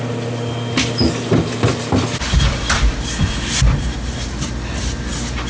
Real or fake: real